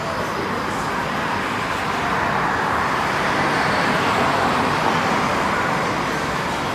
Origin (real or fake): fake